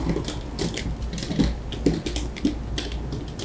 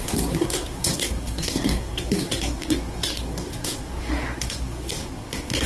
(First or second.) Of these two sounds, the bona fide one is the first